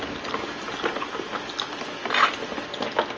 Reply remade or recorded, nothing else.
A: recorded